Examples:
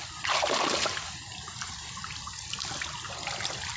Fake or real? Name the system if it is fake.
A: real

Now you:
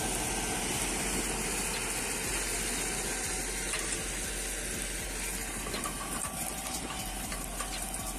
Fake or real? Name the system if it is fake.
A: real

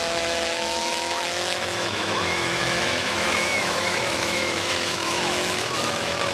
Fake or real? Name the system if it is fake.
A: fake, autoencoder, DAC-VAE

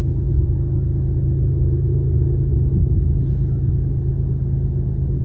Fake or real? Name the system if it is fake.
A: real